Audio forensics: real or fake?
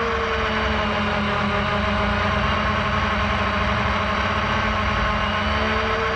real